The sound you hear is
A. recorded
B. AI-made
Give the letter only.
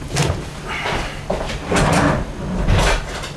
A